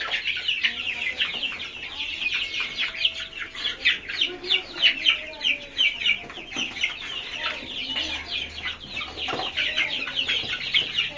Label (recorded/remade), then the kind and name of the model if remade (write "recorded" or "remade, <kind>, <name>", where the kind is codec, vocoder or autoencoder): recorded